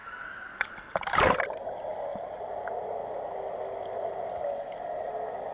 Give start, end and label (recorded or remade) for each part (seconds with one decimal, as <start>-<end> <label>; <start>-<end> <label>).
0.0-2.6 remade; 2.6-5.5 recorded